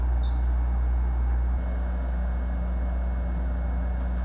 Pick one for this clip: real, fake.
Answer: real